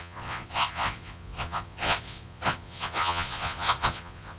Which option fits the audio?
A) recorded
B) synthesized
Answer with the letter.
B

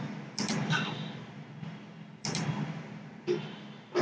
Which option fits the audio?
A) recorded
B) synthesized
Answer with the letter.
A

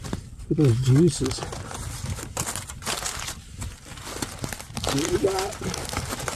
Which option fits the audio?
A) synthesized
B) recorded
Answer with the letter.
B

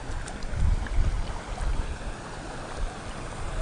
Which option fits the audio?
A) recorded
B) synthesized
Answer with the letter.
A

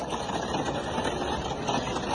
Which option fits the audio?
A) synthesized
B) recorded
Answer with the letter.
B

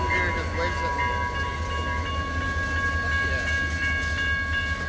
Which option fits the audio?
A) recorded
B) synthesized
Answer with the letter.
A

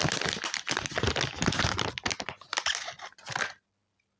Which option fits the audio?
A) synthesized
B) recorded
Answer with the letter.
B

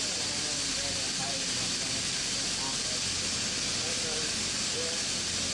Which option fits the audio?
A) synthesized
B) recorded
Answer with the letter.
B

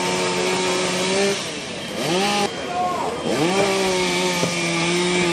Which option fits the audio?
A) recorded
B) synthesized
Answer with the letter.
A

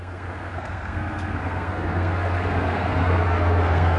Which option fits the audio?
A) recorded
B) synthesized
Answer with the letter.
B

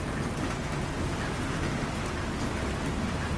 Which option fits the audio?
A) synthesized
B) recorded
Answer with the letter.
B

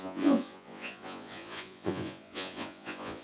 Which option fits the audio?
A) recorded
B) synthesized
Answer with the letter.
B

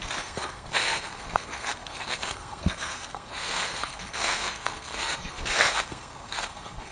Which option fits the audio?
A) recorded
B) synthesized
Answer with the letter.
B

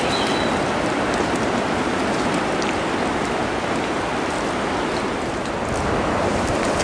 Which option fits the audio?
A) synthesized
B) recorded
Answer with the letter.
B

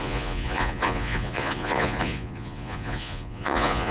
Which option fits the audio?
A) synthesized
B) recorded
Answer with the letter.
A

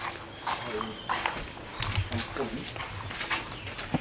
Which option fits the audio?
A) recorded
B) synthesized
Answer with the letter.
A